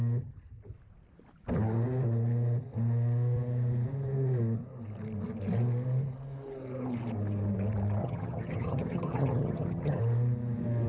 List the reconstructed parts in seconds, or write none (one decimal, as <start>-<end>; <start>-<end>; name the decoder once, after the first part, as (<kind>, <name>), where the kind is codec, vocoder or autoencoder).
8.0-10.0 (vocoder, HiFi-GAN)